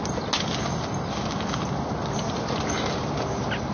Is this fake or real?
real